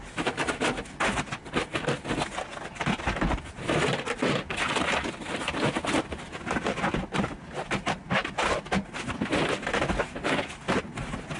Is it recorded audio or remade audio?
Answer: recorded